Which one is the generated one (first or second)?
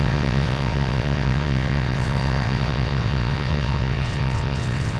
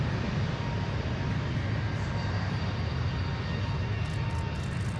first